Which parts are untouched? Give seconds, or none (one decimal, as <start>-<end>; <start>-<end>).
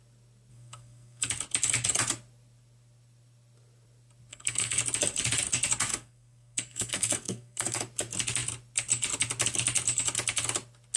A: 0.0-0.5; 1.3-4.3; 4.8-5.9; 7.8-11.0